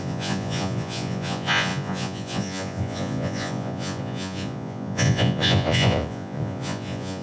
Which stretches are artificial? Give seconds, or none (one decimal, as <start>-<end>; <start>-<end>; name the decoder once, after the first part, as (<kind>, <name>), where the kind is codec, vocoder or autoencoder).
0.0-7.2 (vocoder, Vocos)